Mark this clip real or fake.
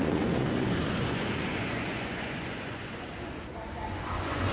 fake